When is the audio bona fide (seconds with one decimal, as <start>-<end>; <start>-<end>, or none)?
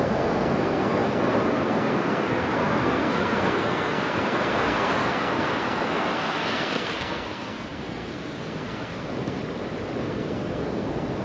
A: 9.4-10.0